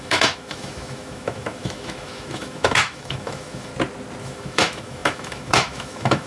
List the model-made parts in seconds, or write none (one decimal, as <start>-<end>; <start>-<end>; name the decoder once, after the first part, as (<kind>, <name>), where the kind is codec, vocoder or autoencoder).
0.0-3.7 (autoencoder, DAC-VAE); 4.2-6.3